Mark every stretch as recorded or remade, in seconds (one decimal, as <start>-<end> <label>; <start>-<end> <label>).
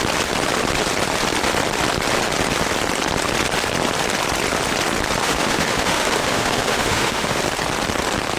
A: 0.0-5.2 recorded; 5.2-7.4 remade; 7.4-8.4 recorded